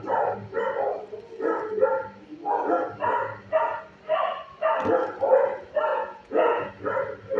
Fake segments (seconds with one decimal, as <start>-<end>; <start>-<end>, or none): 5.9-6.7